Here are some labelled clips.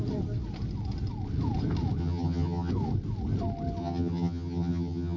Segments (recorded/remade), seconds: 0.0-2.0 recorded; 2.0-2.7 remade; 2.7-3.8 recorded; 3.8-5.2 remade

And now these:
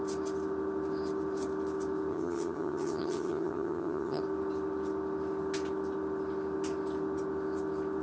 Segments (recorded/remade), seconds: 0.0-2.1 recorded; 2.1-4.2 remade; 4.2-8.0 recorded

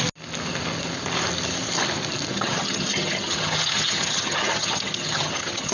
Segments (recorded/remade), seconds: 0.0-2.3 recorded; 2.3-5.7 remade

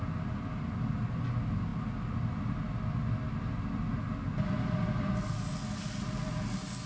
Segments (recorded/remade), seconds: 0.0-6.9 recorded

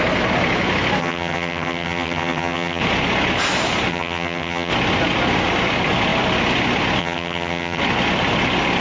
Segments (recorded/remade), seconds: 0.0-1.0 recorded; 1.0-2.8 remade; 2.8-3.9 recorded; 3.9-4.7 remade; 4.7-7.0 recorded; 7.0-7.8 remade; 7.8-8.8 recorded

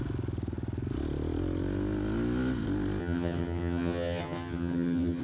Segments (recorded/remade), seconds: 0.0-3.0 recorded; 3.0-5.2 remade